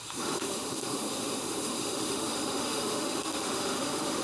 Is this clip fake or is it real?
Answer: fake